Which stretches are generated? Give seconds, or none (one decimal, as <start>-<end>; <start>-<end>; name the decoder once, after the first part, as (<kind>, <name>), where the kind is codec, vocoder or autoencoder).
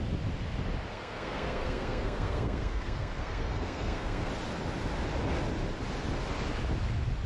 0.9-4.3 (codec, SNAC)